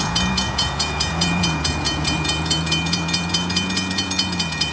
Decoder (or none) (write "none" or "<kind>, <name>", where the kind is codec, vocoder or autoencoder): vocoder, Vocos